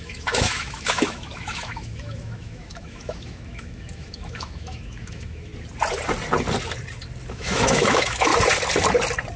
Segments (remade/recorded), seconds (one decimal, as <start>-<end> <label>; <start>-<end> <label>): 0.0-5.5 remade; 5.5-7.3 recorded; 7.3-8.3 remade; 8.3-9.4 recorded